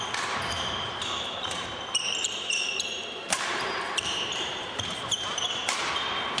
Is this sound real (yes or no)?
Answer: no